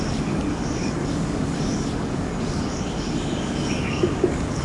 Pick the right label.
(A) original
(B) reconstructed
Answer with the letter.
B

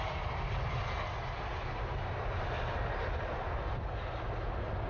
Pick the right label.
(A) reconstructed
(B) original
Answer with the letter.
B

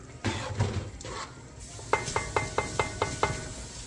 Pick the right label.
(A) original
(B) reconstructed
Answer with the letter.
A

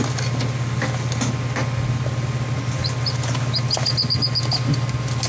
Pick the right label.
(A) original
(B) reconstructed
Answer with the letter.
A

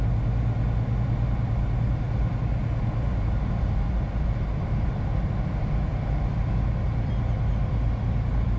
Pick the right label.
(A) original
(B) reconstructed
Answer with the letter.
A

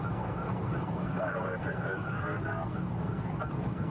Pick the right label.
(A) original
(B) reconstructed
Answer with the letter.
B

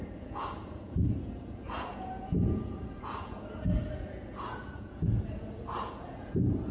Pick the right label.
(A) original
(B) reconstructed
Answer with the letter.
B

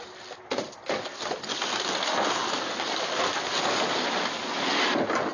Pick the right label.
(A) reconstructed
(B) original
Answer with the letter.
B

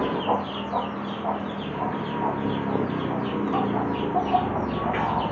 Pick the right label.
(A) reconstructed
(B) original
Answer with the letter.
B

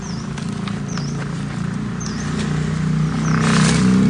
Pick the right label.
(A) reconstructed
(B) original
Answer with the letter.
B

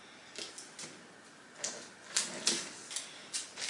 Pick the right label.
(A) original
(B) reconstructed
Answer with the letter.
A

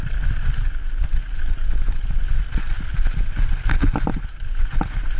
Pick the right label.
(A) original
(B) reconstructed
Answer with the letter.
A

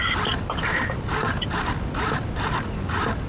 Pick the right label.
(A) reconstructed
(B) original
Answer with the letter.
B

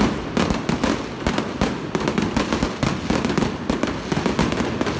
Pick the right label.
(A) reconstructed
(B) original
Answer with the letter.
B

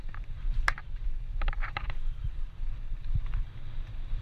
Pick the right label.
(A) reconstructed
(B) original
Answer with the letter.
A